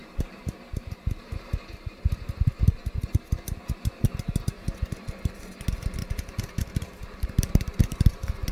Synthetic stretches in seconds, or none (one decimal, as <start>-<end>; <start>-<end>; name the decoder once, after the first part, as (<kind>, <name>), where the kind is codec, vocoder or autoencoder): 0.0-2.7 (vocoder, BigVGAN v2); 6.0-8.5